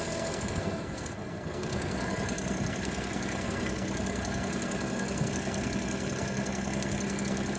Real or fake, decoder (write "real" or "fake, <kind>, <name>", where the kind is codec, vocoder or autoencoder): fake, codec, SNAC